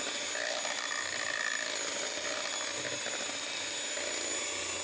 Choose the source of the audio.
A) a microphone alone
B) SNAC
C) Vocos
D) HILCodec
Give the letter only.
A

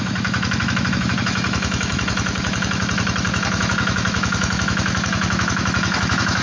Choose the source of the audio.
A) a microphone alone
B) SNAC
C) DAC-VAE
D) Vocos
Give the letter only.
C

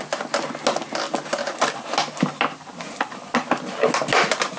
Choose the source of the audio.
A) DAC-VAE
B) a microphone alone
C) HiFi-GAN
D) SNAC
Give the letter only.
B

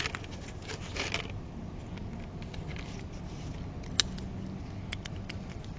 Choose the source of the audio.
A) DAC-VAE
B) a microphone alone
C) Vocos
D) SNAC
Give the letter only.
B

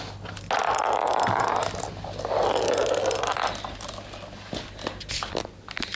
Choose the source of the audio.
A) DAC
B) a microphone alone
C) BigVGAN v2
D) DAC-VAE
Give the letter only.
B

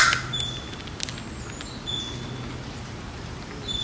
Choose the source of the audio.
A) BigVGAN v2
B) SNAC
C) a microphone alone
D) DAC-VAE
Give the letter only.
C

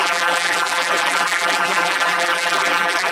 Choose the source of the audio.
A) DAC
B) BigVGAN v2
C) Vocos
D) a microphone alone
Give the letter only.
B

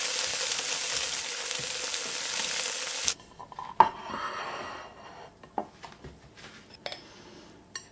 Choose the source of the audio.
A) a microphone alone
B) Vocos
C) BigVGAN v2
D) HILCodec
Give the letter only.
A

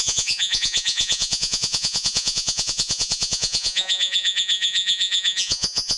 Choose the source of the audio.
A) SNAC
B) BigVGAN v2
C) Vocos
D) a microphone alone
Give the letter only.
C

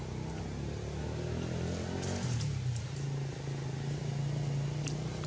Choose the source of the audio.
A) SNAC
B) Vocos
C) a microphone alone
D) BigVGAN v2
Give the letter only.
C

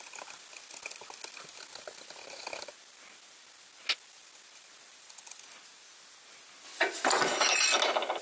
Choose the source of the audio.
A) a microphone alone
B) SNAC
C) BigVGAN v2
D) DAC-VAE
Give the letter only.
A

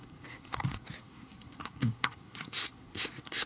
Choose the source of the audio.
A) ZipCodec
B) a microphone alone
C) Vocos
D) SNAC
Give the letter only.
D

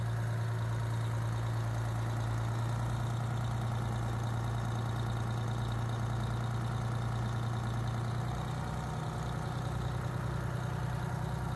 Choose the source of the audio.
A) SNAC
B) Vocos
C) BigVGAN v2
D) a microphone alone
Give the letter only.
D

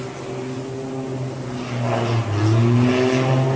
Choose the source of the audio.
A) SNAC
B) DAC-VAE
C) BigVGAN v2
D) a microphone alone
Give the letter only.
D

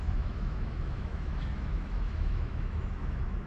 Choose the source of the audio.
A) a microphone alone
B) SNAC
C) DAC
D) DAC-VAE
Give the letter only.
D